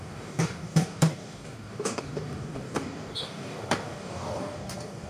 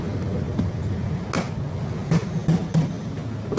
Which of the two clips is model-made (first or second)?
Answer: first